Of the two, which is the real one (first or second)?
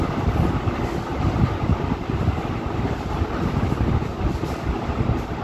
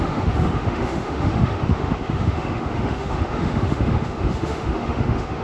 first